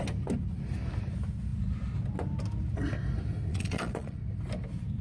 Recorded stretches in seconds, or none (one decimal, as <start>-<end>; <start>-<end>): 0.0-3.5; 4.2-5.0

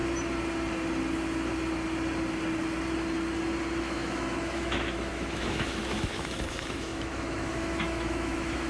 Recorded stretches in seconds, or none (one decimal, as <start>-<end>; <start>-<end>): 0.0-3.8

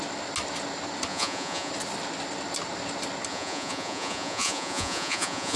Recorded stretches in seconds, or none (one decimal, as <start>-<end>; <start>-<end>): 0.0-1.1; 1.7-3.3

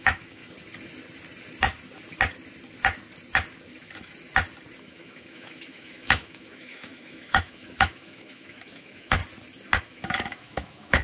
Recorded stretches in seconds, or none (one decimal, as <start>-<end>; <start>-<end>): 0.4-4.8; 9.2-9.8

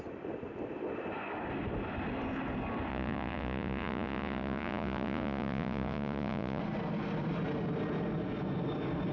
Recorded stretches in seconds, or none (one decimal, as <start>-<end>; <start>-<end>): 0.0-2.9; 6.6-9.1

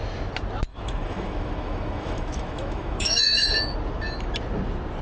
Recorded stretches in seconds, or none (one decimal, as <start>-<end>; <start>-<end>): 0.0-0.7; 3.5-5.0